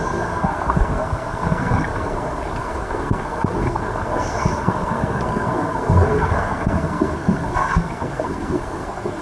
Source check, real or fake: fake